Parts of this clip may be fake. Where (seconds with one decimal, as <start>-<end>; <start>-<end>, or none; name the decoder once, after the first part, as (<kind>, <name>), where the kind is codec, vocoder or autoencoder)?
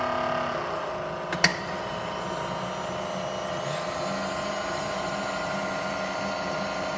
none